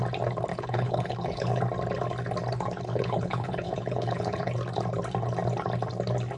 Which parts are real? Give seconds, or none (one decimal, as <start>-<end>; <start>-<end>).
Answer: 0.0-0.5; 1.6-2.9; 4.5-6.4